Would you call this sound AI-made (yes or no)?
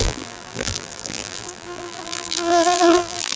yes